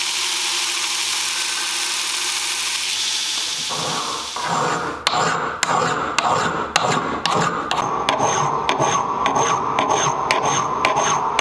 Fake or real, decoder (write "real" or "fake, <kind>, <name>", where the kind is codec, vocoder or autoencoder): real